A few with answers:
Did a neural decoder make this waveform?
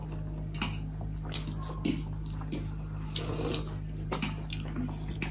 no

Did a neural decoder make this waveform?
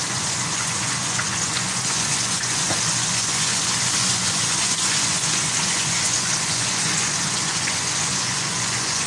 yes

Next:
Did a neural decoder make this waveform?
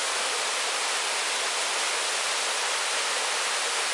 no